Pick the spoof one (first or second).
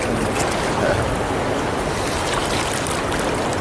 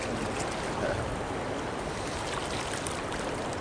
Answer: second